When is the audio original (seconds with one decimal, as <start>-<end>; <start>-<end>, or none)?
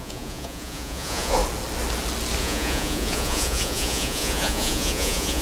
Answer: 1.4-2.4